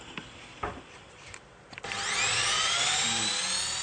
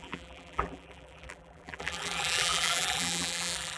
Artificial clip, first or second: second